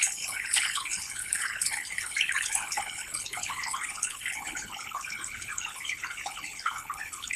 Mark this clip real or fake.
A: fake